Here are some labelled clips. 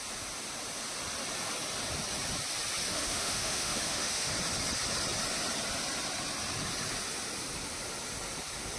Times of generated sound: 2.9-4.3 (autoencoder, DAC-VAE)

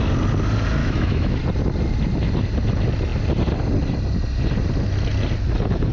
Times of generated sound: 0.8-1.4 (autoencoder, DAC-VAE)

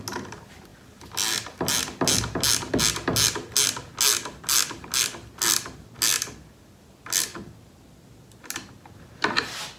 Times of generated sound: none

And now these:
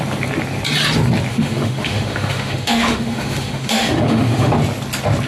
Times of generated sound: 1.3-4.5 (autoencoder, DAC-VAE)

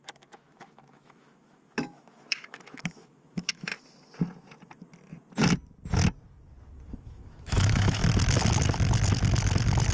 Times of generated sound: 0.0-3.7 (autoencoder, DAC-VAE); 6.9-8.0

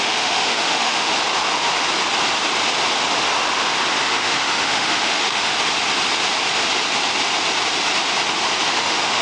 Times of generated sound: 0.0-1.1 (autoencoder, DAC-VAE); 4.1-5.5; 8.7-9.2

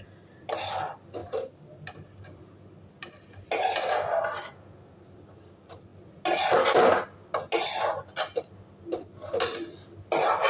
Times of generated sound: none

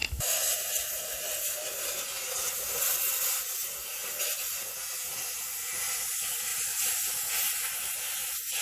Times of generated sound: none